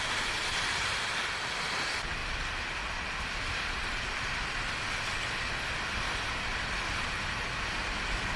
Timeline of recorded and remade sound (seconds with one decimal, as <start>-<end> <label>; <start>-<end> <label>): 0.0-6.5 recorded; 6.5-7.2 remade; 7.2-8.4 recorded